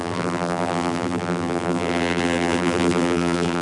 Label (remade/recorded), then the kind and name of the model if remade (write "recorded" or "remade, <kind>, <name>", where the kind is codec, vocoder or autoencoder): remade, vocoder, BigVGAN v2